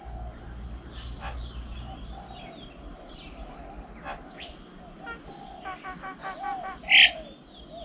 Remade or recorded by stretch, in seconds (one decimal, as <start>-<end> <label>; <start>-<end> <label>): 0.0-7.8 recorded